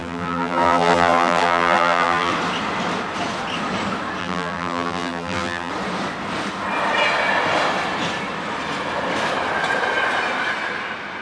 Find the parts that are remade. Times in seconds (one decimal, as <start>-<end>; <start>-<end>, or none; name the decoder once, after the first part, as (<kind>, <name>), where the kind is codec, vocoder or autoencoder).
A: 0.0-2.3 (vocoder, BigVGAN v2); 4.2-5.7